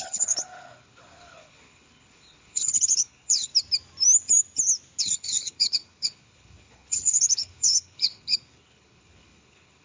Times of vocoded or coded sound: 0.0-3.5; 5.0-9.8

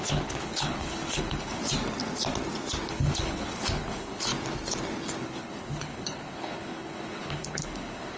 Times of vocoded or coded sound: 0.0-1.6; 2.9-4.3; 5.2-8.2